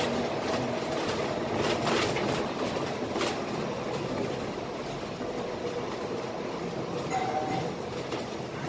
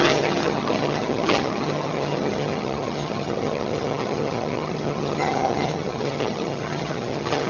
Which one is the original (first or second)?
first